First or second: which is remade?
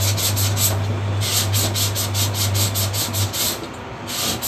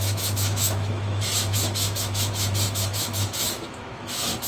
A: second